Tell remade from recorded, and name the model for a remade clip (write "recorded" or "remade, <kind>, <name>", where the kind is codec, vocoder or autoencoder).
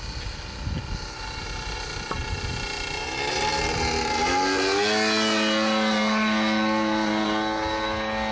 recorded